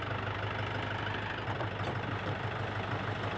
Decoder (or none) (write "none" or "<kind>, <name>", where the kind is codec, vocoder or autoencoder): none